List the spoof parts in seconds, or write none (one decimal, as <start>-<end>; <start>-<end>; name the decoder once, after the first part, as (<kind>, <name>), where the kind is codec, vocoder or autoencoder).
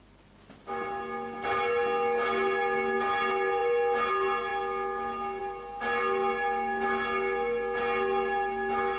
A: none